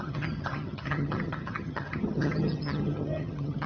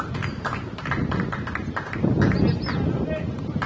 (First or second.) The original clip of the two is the second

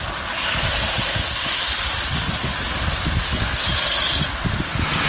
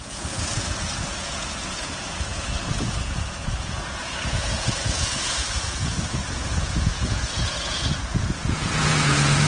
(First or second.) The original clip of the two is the first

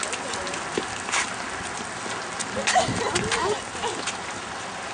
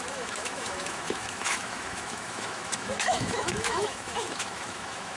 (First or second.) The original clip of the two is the first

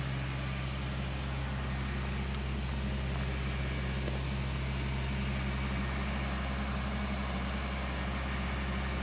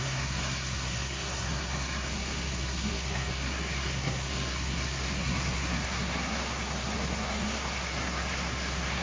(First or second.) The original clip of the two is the first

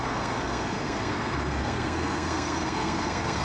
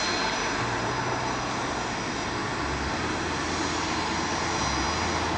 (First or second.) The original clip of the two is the second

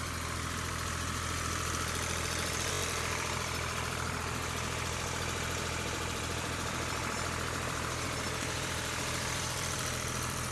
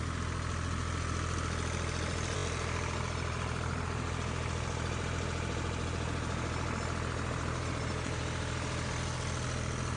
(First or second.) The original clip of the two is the second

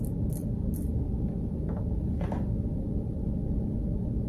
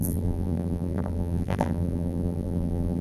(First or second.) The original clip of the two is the first